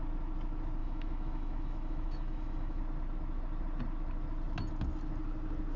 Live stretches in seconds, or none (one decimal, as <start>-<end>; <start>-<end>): 0.0-0.8; 2.8-5.8